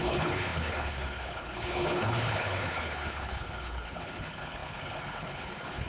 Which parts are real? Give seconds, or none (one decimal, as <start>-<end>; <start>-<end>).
none